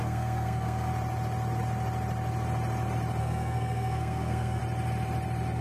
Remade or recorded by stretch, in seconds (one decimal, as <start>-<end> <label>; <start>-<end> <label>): 0.0-0.9 remade; 0.9-3.2 recorded; 3.2-4.6 remade; 4.6-5.6 recorded